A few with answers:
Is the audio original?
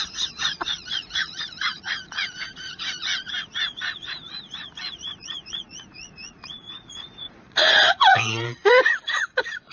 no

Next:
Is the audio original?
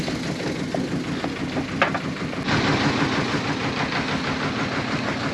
yes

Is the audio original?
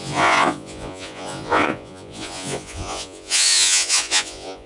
no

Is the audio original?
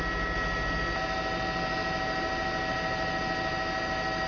yes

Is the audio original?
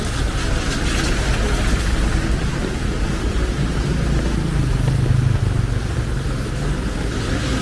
yes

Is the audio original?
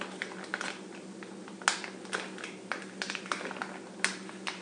yes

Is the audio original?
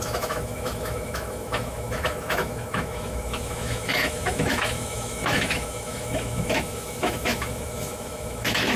no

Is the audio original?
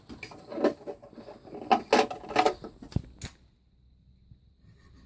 yes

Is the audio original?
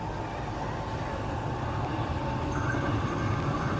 yes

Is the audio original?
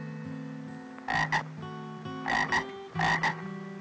yes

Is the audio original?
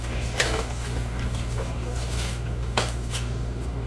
no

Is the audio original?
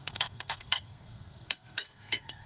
no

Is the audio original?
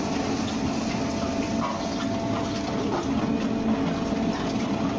yes